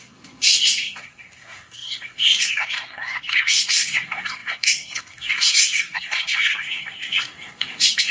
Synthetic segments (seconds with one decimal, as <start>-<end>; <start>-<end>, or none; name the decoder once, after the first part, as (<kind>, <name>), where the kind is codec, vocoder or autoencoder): 0.0-8.1 (codec, SNAC)